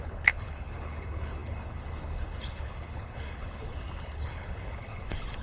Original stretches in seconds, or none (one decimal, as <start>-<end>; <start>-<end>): none